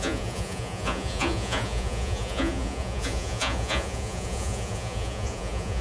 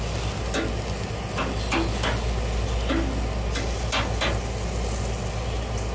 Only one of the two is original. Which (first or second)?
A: second